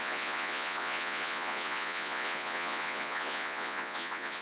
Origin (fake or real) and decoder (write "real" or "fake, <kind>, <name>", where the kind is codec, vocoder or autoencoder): fake, vocoder, Vocos